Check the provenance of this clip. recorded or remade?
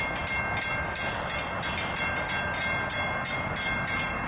recorded